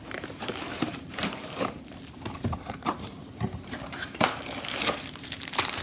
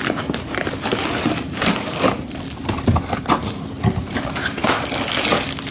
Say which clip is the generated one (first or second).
first